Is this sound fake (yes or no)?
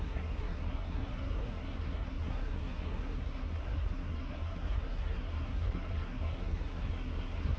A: yes